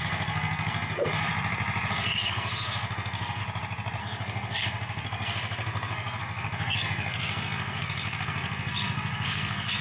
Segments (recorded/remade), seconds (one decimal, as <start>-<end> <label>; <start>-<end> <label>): 0.0-1.3 remade; 1.3-1.9 recorded; 1.9-3.4 remade; 3.4-4.0 recorded; 4.0-9.8 remade